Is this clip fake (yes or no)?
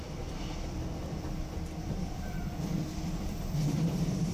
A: yes